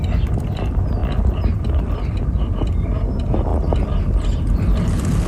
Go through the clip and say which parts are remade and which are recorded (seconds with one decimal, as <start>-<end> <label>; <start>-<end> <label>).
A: 0.0-1.0 recorded; 1.0-2.5 remade; 2.5-5.3 recorded